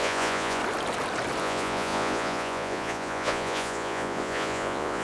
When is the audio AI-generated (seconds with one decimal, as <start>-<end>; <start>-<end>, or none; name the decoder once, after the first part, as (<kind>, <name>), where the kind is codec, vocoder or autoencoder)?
0.0-0.6 (vocoder, Vocos); 1.4-5.0